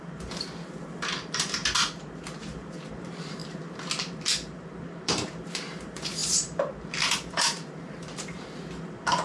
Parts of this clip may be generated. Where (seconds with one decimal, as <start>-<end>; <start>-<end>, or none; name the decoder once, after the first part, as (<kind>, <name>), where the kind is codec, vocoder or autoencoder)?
0.0-1.6 (vocoder, BigVGAN v2); 2.4-3.4; 4.0-9.2